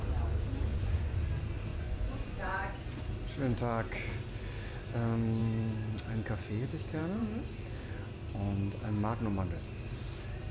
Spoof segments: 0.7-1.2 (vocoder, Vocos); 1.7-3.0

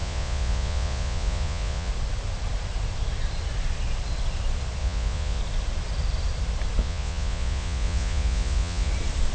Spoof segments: 0.0-1.9 (vocoder, Vocos); 4.8-5.4; 6.8-8.9